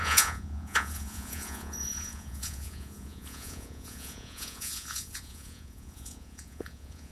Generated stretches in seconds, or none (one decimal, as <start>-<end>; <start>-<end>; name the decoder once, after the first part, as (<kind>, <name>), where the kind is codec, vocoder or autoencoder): 0.0-7.1 (vocoder, Vocos)